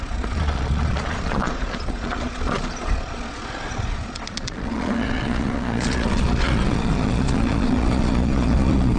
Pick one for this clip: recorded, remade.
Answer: remade